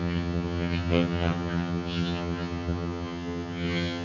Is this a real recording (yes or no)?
no